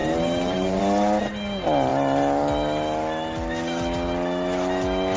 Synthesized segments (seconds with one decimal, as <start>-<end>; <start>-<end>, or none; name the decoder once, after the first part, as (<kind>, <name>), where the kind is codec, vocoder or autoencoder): 0.0-0.8 (vocoder, BigVGAN v2)